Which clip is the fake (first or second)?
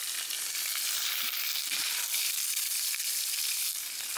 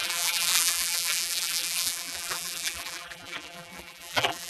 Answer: second